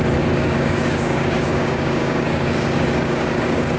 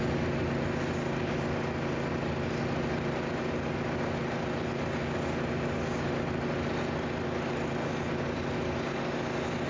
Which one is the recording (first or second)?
second